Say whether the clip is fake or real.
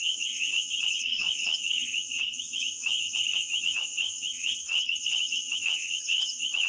fake